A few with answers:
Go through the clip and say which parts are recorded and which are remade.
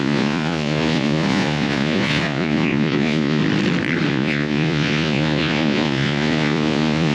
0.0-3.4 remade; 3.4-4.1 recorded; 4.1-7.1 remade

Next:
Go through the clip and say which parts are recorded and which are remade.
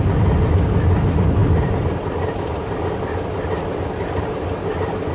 0.0-1.4 recorded; 1.4-2.8 remade; 2.8-5.1 recorded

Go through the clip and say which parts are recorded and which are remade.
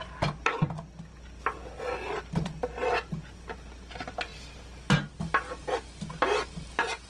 0.0-7.1 recorded